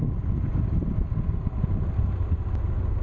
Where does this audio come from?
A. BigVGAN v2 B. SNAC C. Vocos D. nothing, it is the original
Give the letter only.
D